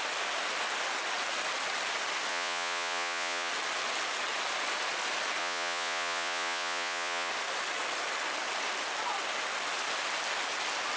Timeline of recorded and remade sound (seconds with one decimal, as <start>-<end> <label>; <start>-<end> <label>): 0.0-2.3 recorded; 2.3-3.5 remade; 3.5-5.4 recorded; 5.4-7.3 remade; 7.3-11.0 recorded